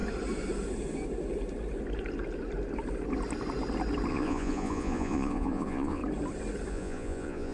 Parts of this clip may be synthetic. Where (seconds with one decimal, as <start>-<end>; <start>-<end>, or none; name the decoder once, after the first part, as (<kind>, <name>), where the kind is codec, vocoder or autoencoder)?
4.1-6.0 (vocoder, Vocos); 6.7-7.5

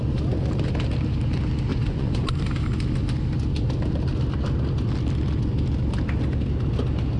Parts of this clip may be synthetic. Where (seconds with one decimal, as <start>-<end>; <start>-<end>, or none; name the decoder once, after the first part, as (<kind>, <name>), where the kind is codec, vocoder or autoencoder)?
1.7-2.4 (vocoder, Vocos)

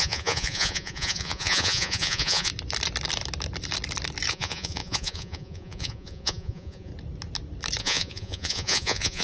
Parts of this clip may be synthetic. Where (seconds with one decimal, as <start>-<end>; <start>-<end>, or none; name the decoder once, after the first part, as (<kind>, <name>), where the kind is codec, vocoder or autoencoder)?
0.0-2.5 (vocoder, Vocos); 4.3-6.9; 7.8-9.2

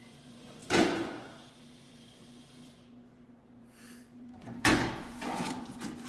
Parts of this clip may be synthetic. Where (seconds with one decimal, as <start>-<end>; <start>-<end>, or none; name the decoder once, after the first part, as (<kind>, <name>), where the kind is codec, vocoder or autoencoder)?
0.0-6.1 (vocoder, Vocos)

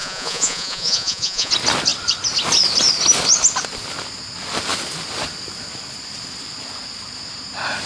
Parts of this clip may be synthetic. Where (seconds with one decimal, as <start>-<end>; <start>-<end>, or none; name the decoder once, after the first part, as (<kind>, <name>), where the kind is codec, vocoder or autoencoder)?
0.0-1.5 (vocoder, Vocos)

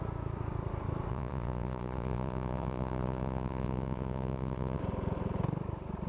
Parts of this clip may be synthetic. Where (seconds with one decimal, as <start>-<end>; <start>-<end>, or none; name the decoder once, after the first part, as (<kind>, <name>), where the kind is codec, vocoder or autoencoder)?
1.1-4.8 (vocoder, Vocos)

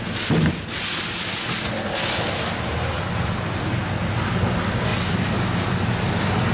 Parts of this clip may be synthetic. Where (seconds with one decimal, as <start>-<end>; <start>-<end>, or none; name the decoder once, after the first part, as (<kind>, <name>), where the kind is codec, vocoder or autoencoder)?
none

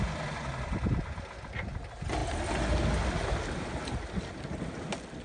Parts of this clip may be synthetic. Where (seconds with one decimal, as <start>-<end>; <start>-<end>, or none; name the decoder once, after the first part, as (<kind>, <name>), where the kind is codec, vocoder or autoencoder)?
none